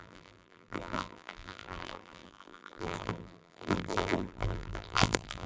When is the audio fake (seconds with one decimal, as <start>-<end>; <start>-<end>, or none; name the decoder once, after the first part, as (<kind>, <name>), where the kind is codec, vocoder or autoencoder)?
0.0-5.5 (vocoder, BigVGAN v2)